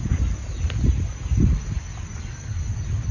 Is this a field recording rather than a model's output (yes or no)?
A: yes